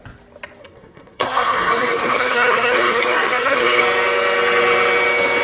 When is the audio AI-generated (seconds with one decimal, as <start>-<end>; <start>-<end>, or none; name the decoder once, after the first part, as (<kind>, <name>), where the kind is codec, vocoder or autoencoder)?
0.6-3.8 (codec, SNAC)